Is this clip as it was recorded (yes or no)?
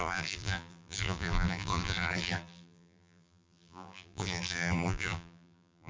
no